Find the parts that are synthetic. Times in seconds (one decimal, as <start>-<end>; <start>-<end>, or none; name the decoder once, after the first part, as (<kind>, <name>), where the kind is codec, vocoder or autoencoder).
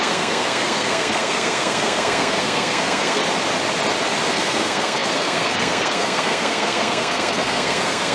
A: 0.0-3.2 (codec, SNAC); 4.3-8.1